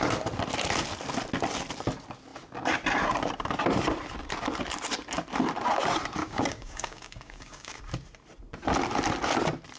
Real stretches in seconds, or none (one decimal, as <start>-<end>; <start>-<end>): 0.0-6.2; 7.8-9.8